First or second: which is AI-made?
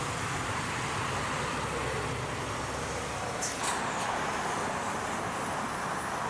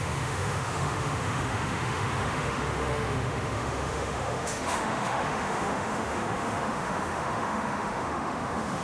second